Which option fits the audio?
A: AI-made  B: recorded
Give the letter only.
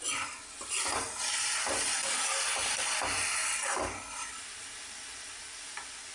A